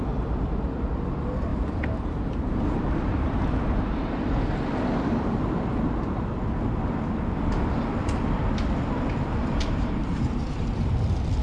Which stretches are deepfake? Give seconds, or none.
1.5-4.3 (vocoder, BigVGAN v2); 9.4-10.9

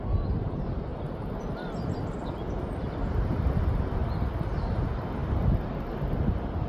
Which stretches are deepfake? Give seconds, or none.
none

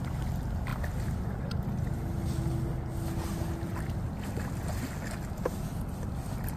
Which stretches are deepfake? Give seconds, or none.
none

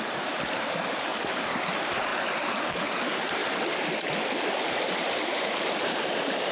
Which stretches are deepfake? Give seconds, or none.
0.0-1.1 (vocoder, BigVGAN v2); 1.7-2.1; 2.9-3.4; 5.3-6.5

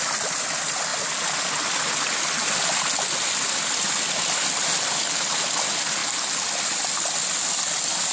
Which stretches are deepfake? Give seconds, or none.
none

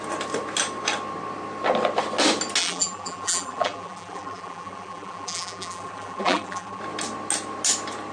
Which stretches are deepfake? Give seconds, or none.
2.6-6.8 (vocoder, BigVGAN v2)

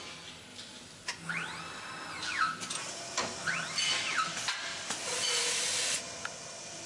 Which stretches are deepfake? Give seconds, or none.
0.5-1.1 (vocoder, BigVGAN v2); 4.7-6.0

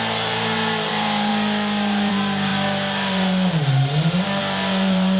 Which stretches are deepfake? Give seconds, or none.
0.0-1.3 (vocoder, BigVGAN v2); 2.1-5.2